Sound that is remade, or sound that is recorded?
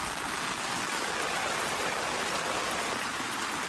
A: recorded